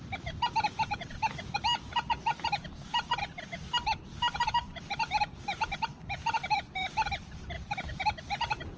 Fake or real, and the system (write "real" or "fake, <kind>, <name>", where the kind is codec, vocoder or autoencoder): real